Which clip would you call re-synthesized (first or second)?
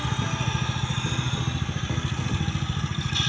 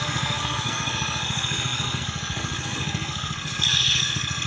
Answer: second